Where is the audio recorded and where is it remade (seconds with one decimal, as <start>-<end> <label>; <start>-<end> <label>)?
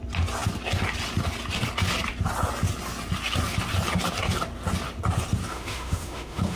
0.0-5.5 recorded; 5.5-6.6 remade